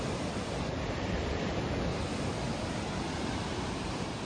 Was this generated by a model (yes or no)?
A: yes